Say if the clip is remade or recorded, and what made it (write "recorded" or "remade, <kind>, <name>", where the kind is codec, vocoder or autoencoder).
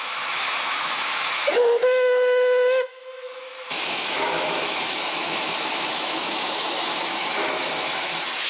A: remade, autoencoder, DAC-VAE